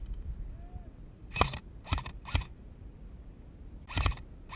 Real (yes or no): yes